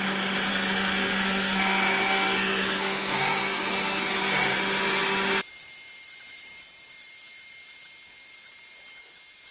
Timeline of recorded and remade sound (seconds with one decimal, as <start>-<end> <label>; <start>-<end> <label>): 0.0-0.5 recorded; 0.5-4.4 remade; 4.4-9.5 recorded